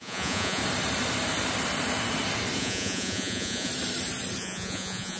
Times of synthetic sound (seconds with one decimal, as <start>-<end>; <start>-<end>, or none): 0.0-0.6; 2.6-3.7; 4.4-5.2